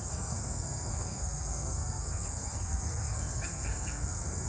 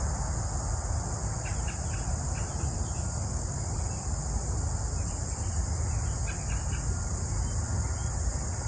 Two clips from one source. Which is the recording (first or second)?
second